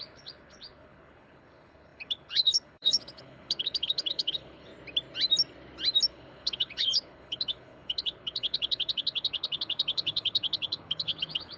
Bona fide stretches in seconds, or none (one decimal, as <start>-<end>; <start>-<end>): 4.7-6.1